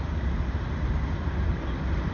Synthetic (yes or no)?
no